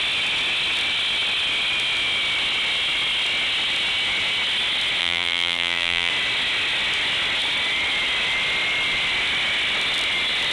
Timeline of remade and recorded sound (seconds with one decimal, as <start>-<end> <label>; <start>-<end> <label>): 0.0-5.0 recorded; 5.0-6.1 remade; 6.1-10.5 recorded